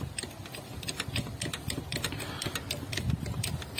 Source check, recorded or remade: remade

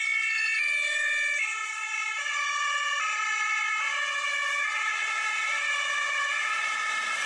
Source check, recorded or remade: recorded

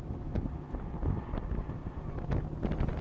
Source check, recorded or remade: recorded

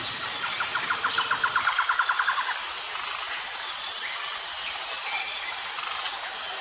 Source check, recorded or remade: recorded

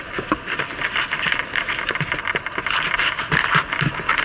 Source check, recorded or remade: recorded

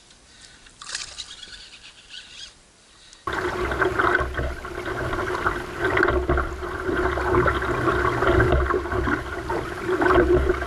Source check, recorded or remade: recorded